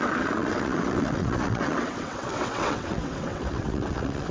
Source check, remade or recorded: remade